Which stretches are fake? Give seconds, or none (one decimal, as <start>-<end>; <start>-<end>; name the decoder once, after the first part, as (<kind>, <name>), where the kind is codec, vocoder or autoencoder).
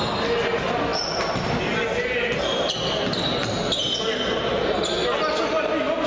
none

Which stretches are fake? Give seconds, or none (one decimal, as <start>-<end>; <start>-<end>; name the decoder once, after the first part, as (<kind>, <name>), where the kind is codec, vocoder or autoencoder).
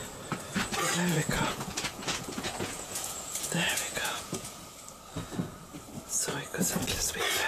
1.1-4.6 (vocoder, Vocos)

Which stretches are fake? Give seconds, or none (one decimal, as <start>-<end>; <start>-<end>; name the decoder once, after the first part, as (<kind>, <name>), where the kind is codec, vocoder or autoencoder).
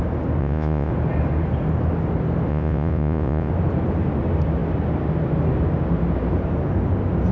0.4-0.9 (vocoder, Vocos); 2.5-3.5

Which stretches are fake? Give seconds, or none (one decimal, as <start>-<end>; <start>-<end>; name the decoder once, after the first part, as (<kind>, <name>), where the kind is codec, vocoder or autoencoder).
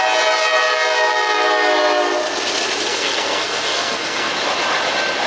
2.9-4.3 (codec, SNAC)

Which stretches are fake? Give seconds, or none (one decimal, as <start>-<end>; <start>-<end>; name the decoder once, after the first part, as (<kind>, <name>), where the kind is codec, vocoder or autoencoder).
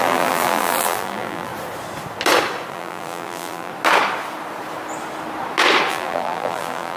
0.0-1.5 (vocoder, BigVGAN v2); 2.7-3.7; 5.9-7.0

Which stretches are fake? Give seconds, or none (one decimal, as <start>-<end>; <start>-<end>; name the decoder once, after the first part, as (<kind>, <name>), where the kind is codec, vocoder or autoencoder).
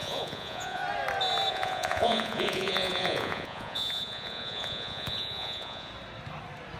0.0-0.8 (vocoder, Vocos); 1.5-5.9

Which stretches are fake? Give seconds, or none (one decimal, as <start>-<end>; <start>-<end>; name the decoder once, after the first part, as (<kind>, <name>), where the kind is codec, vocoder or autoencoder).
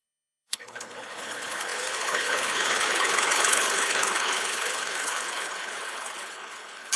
0.0-7.0 (codec, HILCodec)